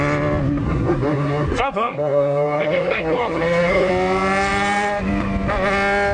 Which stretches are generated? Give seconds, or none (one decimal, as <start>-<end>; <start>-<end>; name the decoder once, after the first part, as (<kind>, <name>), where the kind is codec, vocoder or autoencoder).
0.6-3.9 (codec, SNAC)